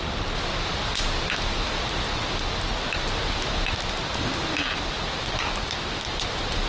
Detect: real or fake real